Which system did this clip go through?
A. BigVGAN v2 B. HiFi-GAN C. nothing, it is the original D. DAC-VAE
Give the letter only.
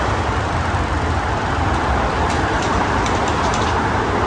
A